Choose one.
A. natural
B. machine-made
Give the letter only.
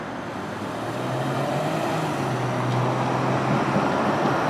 A